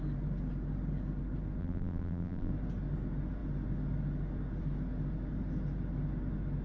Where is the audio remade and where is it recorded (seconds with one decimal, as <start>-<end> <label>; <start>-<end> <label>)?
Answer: 0.0-1.6 recorded; 1.6-2.5 remade; 2.5-6.6 recorded